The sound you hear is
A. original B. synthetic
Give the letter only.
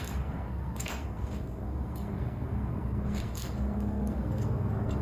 B